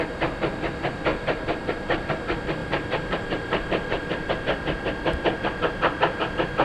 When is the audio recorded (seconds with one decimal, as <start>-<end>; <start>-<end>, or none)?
0.0-1.1; 2.1-2.6; 4.3-6.6